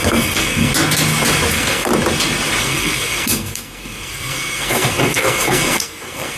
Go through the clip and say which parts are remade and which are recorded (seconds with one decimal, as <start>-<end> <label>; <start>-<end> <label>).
0.0-0.7 remade; 0.7-1.5 recorded; 1.5-1.9 remade; 1.9-2.6 recorded; 2.6-6.4 remade